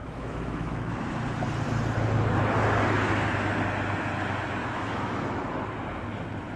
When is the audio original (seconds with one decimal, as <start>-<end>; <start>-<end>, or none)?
0.9-4.6; 5.4-6.6